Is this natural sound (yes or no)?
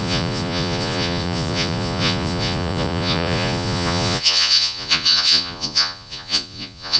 no